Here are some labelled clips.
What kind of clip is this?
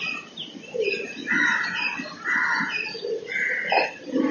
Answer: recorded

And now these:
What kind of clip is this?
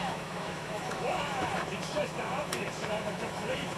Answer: remade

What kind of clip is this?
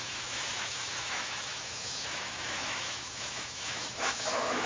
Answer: remade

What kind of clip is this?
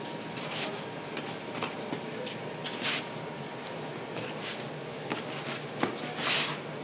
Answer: recorded